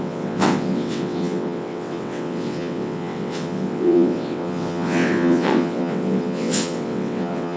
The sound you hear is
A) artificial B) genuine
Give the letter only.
A